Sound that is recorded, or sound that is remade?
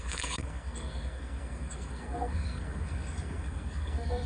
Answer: remade